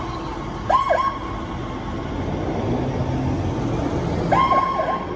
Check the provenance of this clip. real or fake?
real